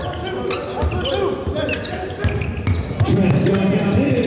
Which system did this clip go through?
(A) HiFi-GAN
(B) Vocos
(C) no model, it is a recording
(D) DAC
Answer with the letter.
C